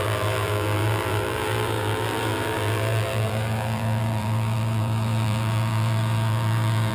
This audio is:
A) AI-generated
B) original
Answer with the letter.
A